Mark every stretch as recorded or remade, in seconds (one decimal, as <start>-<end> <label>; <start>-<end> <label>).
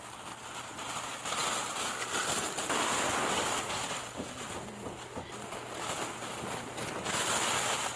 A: 0.0-8.0 recorded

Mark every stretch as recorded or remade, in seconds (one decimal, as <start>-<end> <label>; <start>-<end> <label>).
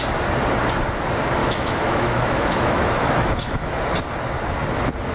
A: 0.0-1.4 recorded; 1.4-3.8 remade; 3.8-5.1 recorded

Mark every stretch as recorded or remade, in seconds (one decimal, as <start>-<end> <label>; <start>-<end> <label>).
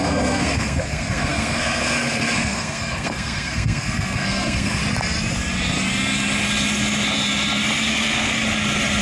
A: 0.0-4.8 remade; 4.8-7.9 recorded; 7.9-8.3 remade; 8.3-9.0 recorded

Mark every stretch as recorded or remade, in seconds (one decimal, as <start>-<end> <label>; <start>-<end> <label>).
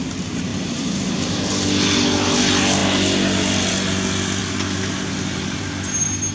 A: 0.0-0.5 recorded; 0.5-1.4 remade; 1.4-4.4 recorded; 4.4-5.6 remade; 5.6-6.3 recorded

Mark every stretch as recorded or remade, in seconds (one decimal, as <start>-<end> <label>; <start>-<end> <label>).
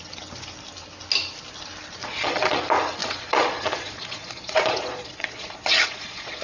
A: 0.0-2.0 recorded; 2.0-2.6 remade; 2.6-3.0 recorded; 3.0-6.4 remade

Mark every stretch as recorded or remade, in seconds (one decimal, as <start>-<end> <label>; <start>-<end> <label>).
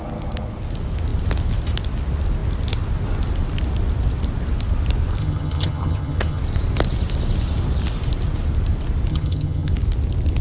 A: 0.0-5.2 recorded; 5.2-6.4 remade; 6.4-9.1 recorded; 9.1-9.7 remade; 9.7-10.4 recorded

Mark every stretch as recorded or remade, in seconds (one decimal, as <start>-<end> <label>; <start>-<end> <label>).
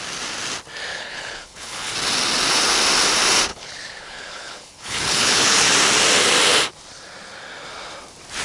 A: 0.0-0.9 recorded; 0.9-1.9 remade; 1.9-3.5 recorded; 3.5-5.7 remade; 5.7-8.4 recorded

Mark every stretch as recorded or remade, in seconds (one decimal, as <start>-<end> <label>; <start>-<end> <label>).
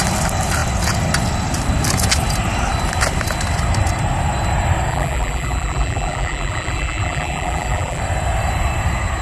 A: 0.0-4.9 recorded; 4.9-8.0 remade; 8.0-9.2 recorded